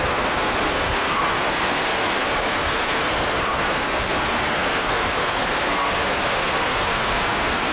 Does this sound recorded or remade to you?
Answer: remade